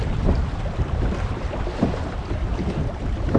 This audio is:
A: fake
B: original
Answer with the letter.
A